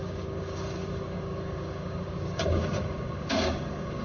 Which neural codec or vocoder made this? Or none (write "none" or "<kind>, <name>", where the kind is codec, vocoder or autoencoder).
codec, DAC